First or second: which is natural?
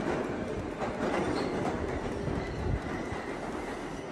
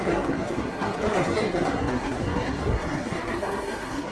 first